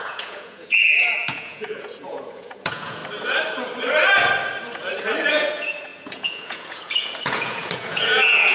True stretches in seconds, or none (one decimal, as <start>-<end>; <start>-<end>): 3.0-5.3